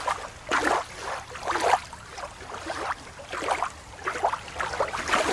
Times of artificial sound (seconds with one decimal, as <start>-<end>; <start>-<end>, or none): none